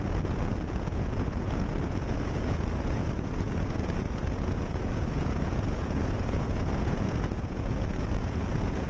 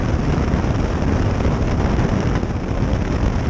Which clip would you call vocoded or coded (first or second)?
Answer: first